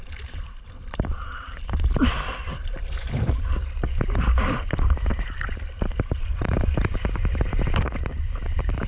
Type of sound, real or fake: fake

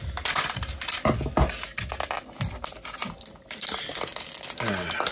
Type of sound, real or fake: real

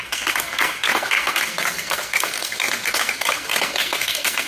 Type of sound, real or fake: fake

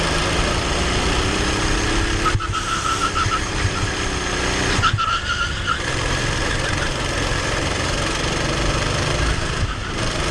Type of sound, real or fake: real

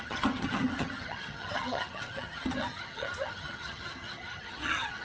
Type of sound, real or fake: fake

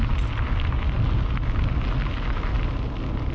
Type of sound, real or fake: real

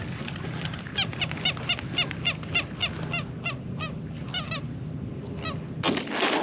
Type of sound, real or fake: real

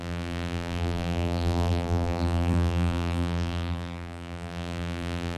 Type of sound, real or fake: fake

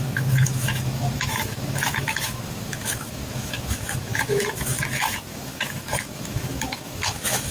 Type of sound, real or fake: fake